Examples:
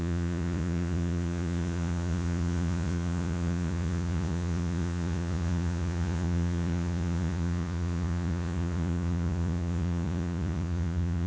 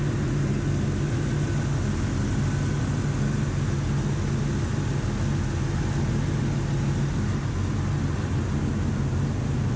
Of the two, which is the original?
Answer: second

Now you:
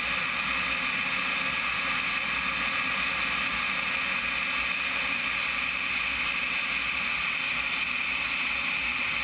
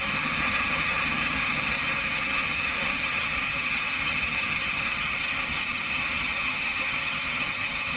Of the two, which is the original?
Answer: first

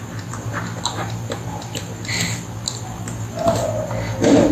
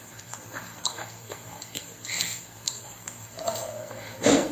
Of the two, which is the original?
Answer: first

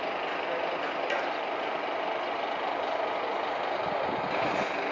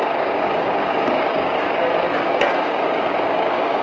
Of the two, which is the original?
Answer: first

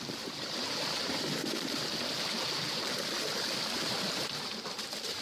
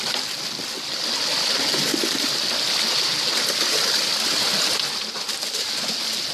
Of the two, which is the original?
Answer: second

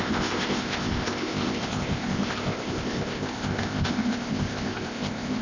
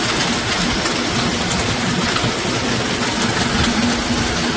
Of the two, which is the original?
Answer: second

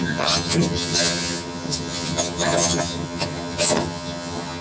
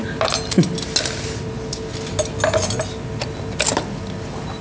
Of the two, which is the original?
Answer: second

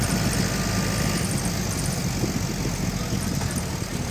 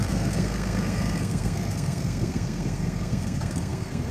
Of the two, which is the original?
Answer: first